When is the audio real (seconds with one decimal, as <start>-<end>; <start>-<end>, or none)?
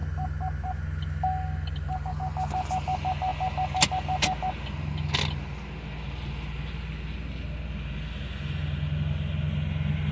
0.0-10.1